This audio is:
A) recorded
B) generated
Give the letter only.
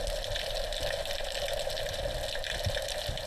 A